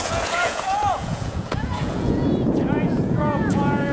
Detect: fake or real fake